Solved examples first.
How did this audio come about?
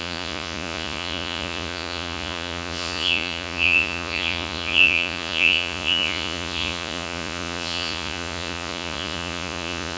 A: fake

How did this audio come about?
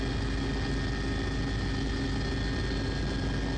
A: real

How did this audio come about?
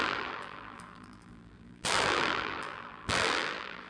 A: fake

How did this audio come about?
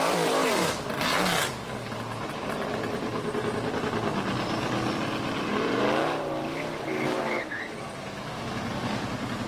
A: real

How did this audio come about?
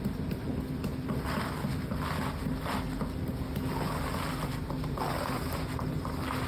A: real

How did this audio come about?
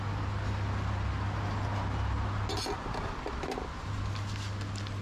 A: real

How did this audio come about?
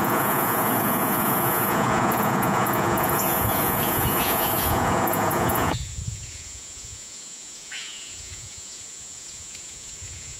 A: fake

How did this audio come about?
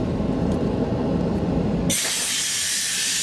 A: real